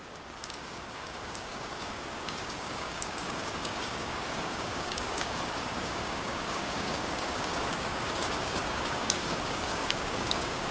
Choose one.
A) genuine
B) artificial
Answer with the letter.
B